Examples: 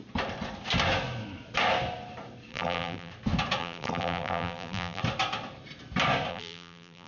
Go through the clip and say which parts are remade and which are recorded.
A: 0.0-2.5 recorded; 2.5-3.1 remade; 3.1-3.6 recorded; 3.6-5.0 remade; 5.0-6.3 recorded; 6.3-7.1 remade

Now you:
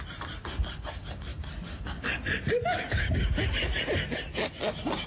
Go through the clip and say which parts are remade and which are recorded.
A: 0.0-5.1 recorded